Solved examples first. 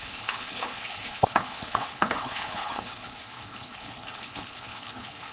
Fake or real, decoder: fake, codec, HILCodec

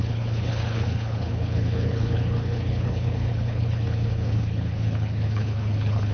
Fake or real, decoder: fake, codec, HILCodec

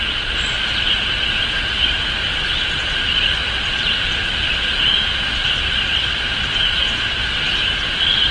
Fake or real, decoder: real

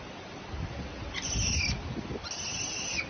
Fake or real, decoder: real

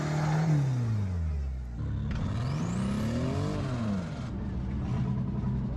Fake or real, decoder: real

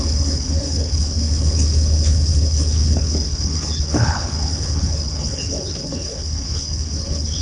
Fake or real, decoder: fake, codec, HILCodec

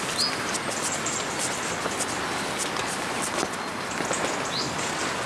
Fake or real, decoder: real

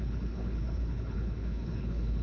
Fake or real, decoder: fake, codec, HILCodec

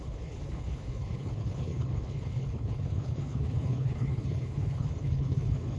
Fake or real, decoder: fake, codec, HILCodec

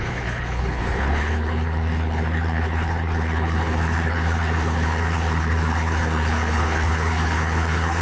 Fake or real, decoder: fake, codec, HILCodec